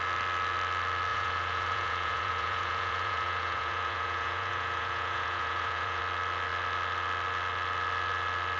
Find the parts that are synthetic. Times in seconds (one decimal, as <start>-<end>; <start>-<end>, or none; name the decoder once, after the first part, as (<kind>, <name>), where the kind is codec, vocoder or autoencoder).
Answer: 1.1-6.0 (vocoder, Vocos)